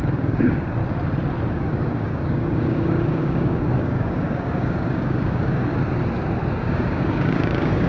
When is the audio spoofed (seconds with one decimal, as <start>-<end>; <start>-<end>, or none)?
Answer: 0.0-0.8; 1.5-5.7; 6.6-7.9